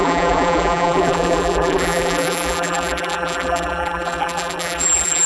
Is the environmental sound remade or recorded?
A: remade